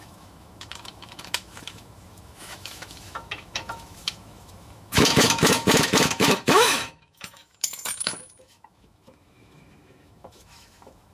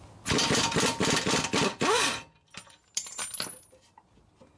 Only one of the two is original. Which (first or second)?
second